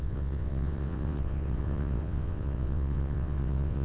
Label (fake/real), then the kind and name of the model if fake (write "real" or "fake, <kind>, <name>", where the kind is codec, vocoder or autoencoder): fake, vocoder, WaveNeXt